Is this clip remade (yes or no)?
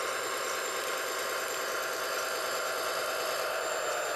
no